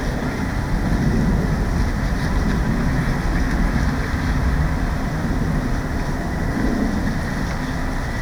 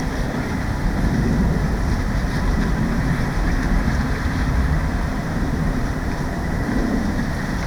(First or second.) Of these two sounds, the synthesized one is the second